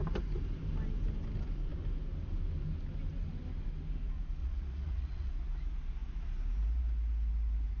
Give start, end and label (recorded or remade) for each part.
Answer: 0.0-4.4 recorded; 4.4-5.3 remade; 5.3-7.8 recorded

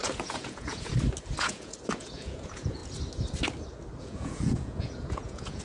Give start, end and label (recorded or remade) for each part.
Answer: 0.0-0.9 remade; 0.9-1.4 recorded; 1.4-2.8 remade; 2.8-4.0 recorded; 4.0-5.6 remade

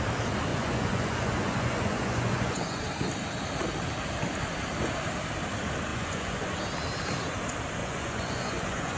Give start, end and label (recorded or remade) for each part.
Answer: 0.0-0.5 recorded; 0.5-2.8 remade; 2.8-5.9 recorded; 5.9-6.6 remade; 6.6-7.8 recorded; 7.8-9.0 remade